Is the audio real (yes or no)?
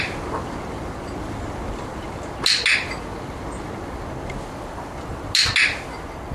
yes